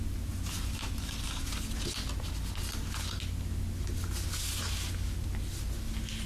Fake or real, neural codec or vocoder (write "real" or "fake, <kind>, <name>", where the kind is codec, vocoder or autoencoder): real